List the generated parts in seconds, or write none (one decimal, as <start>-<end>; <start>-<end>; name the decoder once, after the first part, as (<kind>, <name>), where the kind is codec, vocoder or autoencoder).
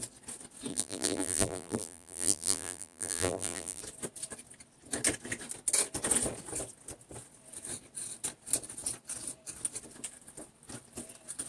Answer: 0.7-3.8 (vocoder, BigVGAN v2)